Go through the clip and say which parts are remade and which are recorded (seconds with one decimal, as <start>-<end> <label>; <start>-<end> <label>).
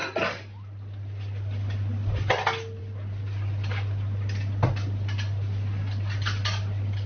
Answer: 0.0-7.1 recorded